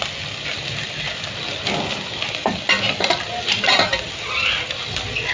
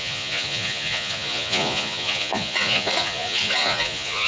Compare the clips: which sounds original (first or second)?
first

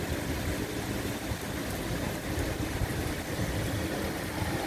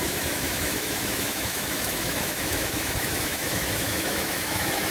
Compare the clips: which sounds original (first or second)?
first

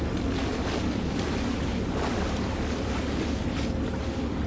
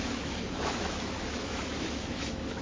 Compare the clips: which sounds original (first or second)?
first